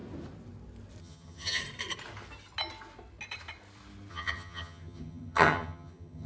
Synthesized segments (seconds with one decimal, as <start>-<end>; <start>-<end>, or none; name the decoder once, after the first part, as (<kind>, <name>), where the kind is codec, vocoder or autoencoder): 1.0-1.6 (vocoder, HiFi-GAN); 4.1-6.3